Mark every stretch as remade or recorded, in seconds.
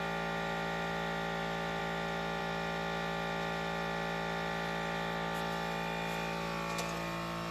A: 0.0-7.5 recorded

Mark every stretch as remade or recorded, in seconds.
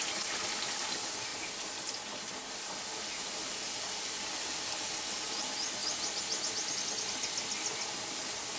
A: 0.0-8.6 recorded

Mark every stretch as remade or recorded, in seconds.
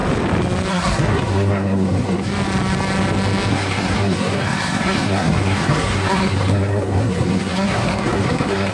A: 0.0-0.7 recorded; 0.7-2.3 remade; 2.3-3.5 recorded; 3.5-8.7 remade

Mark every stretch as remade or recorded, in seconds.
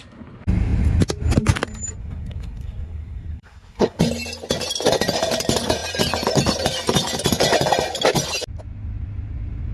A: 0.0-2.0 recorded; 2.0-4.0 remade; 4.0-9.7 recorded